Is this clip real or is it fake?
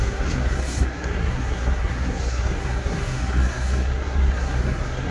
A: fake